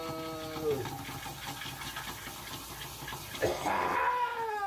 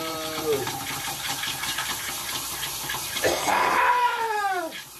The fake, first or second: second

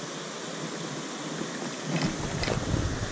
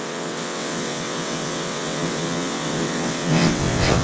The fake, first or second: second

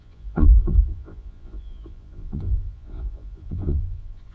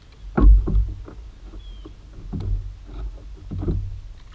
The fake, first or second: first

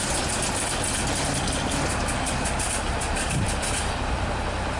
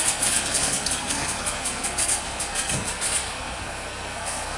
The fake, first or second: second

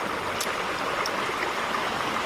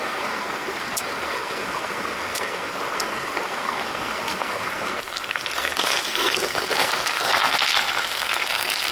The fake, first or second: second